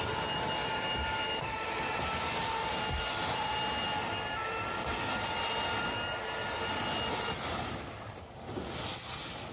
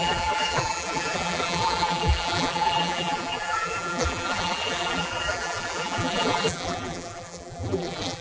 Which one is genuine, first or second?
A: first